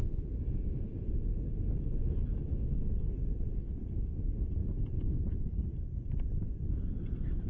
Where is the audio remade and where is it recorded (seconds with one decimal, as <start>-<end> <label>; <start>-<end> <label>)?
0.0-1.1 remade; 1.1-4.6 recorded; 4.6-5.5 remade; 5.5-7.5 recorded